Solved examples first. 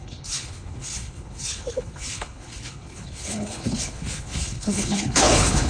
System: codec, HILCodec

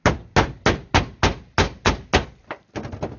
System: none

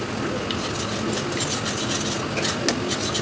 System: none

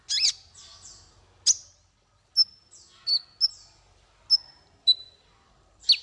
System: none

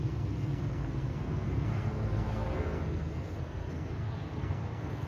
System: codec, SNAC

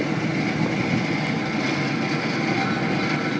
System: none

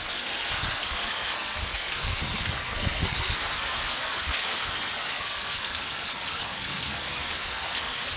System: codec, SNAC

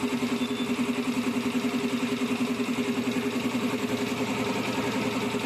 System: none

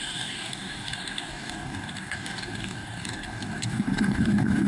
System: codec, DAC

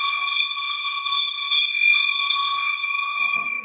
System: codec, SNAC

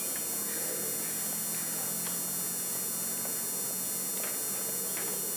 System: none